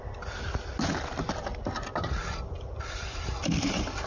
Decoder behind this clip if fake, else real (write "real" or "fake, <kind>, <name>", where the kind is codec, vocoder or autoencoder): real